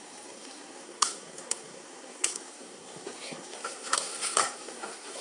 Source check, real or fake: fake